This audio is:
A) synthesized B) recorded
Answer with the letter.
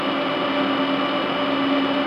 B